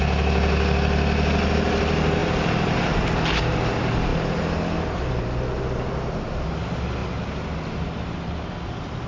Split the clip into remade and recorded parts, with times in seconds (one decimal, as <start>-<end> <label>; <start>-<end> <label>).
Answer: 0.0-2.2 recorded; 2.2-2.8 remade; 2.8-9.1 recorded